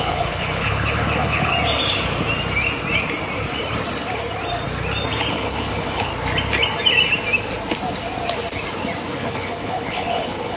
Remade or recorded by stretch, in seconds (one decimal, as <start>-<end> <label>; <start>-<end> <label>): 0.0-1.5 remade; 1.5-5.3 recorded; 5.3-6.1 remade; 6.1-9.1 recorded; 9.1-10.6 remade